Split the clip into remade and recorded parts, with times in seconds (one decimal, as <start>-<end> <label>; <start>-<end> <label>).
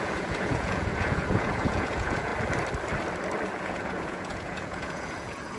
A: 0.0-2.3 remade; 2.3-3.6 recorded; 3.6-5.6 remade